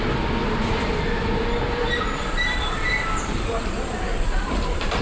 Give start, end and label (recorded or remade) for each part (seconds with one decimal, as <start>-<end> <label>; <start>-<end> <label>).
0.0-1.8 recorded; 1.8-5.0 remade